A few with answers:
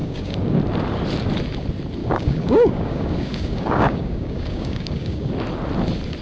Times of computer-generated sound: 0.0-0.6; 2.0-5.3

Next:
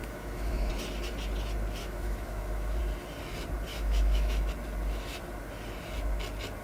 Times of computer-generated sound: 0.0-0.7; 1.8-2.8; 3.7-4.5

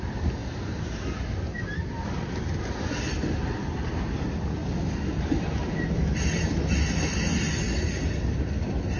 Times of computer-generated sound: none

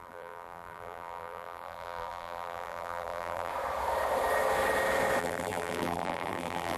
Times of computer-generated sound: 0.0-3.5; 5.2-6.8